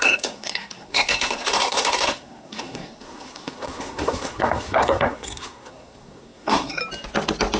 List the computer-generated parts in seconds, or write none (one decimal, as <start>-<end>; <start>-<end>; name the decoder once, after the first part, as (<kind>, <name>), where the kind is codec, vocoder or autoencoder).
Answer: 0.0-6.8 (codec, SNAC)